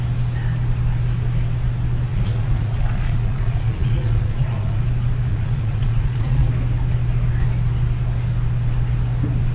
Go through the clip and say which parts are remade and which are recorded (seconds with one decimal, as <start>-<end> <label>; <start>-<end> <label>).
0.0-2.1 recorded; 2.1-4.8 remade; 4.8-5.3 recorded; 5.3-6.5 remade; 6.5-9.5 recorded